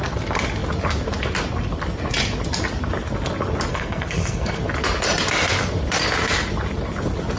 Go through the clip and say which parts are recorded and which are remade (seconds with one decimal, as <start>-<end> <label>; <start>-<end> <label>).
0.0-3.7 recorded; 3.7-4.6 remade; 4.6-7.4 recorded